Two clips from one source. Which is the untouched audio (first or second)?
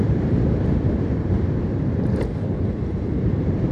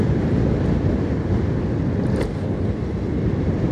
second